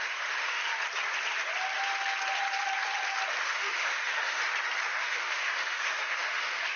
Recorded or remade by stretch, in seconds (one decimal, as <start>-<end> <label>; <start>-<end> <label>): 0.0-0.6 remade; 0.6-3.4 recorded; 3.4-4.4 remade; 4.4-4.9 recorded; 4.9-6.8 remade